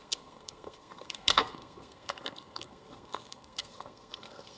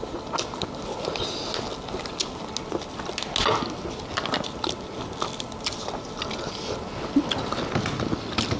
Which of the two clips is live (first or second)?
second